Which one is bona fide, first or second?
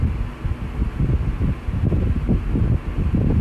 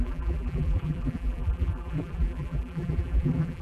first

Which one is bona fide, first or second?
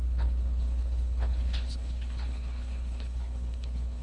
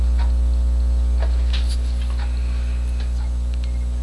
second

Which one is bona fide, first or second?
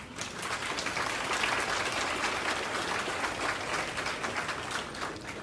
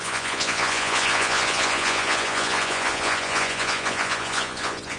first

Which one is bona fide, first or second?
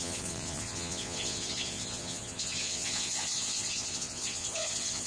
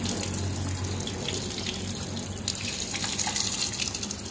second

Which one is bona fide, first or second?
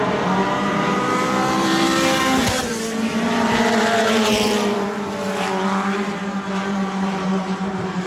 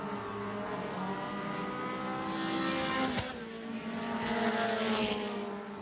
second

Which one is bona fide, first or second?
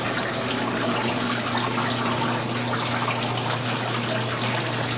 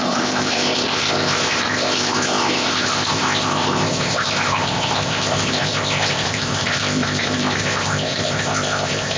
first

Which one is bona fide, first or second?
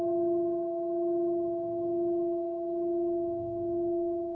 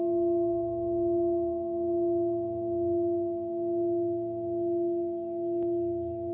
second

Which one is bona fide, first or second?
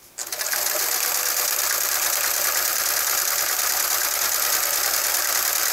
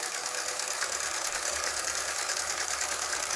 first